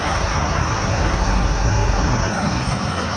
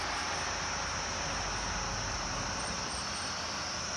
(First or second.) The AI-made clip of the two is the first